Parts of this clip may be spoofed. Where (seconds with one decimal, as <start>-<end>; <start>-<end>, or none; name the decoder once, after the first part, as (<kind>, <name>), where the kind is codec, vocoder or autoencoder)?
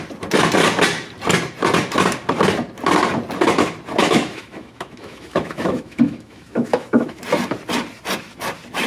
4.0-7.2 (autoencoder, DAC-VAE)